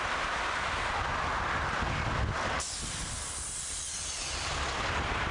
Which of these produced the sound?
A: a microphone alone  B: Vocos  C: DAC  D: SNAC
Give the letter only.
A